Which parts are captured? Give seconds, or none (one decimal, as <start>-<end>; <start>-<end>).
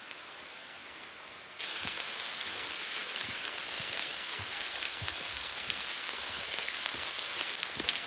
none